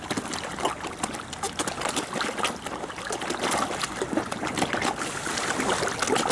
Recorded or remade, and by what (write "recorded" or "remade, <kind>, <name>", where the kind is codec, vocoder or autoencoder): recorded